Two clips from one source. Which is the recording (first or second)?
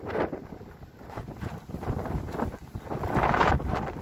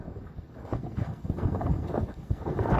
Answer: first